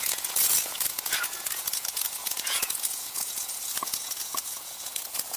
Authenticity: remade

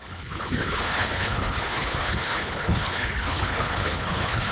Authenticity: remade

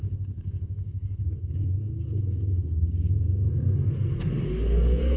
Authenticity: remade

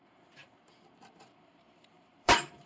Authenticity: remade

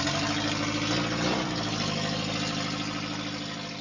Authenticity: recorded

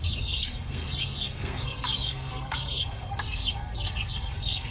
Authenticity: remade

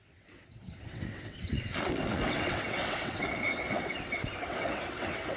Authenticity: remade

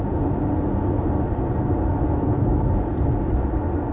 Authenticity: recorded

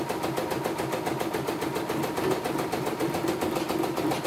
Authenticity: recorded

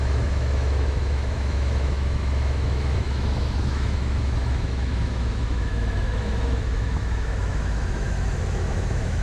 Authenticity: remade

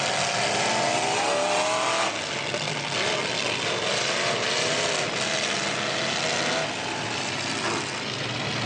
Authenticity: recorded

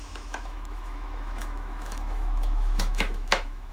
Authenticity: remade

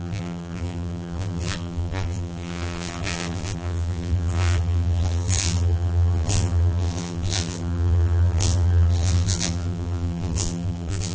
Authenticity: remade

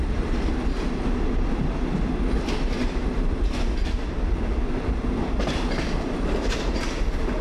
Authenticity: recorded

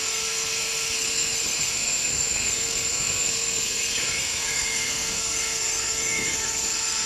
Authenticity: remade